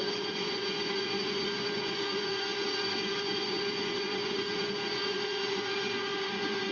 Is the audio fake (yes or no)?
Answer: yes